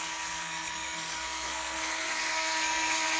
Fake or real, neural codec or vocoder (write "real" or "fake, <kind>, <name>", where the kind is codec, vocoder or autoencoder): fake, codec, SNAC